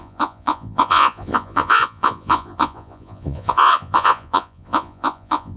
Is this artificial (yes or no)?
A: yes